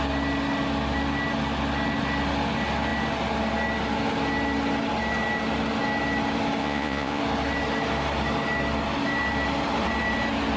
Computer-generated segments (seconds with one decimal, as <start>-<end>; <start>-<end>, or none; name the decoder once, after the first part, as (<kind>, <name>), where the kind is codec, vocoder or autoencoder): 6.6-7.2 (vocoder, Vocos)